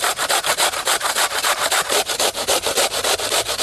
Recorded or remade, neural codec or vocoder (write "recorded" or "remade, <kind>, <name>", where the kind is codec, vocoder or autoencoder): recorded